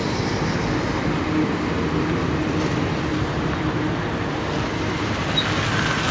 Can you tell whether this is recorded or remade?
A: recorded